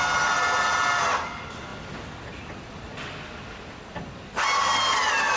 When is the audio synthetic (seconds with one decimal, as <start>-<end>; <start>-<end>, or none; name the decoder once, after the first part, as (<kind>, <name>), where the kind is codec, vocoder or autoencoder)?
none